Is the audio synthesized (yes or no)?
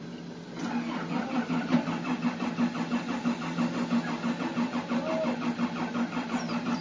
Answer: no